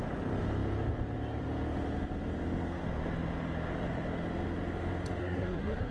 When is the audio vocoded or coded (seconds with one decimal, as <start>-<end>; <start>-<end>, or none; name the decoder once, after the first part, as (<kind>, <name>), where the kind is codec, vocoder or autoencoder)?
5.2-5.9 (codec, SNAC)